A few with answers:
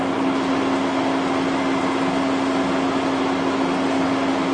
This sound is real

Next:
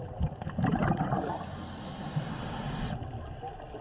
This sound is real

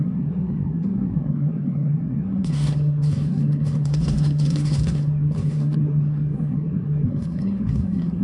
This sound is fake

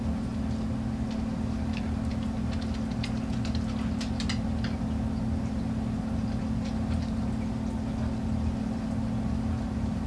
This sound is real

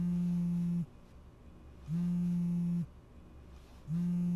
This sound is real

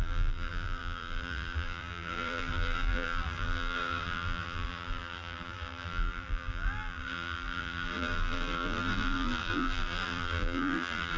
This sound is fake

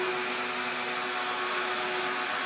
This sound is real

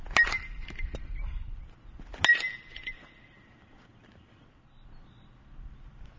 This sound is real